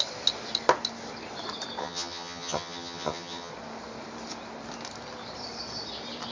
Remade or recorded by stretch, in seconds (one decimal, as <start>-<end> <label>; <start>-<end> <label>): 0.0-1.8 recorded; 1.8-3.5 remade; 3.5-6.3 recorded